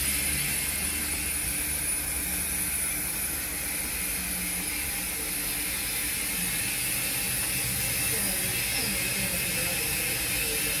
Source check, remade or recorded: recorded